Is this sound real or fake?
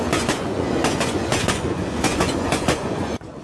fake